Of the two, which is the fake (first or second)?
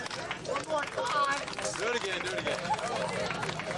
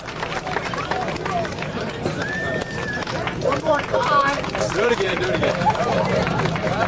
second